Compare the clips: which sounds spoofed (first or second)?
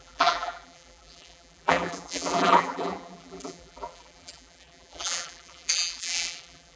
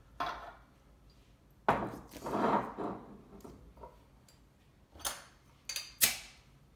first